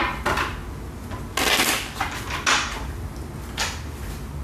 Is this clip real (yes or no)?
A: yes